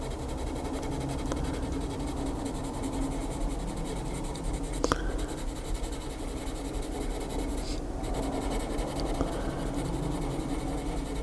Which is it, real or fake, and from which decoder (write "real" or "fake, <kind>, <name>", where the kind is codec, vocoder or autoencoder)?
real